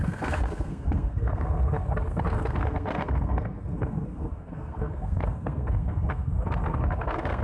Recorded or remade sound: remade